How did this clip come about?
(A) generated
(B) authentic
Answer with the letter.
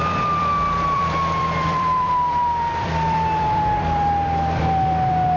A